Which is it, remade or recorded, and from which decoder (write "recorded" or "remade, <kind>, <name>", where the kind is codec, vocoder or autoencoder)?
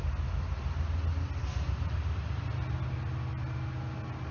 recorded